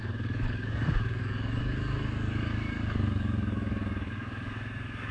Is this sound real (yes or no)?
no